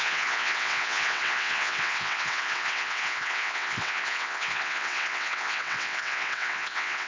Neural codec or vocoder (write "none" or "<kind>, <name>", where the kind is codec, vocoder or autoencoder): vocoder, WaveNeXt